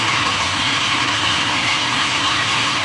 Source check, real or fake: fake